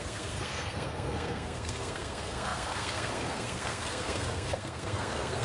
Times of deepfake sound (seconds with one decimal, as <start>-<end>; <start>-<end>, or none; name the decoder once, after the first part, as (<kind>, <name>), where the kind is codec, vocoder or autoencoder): 0.0-5.4 (codec, SNAC)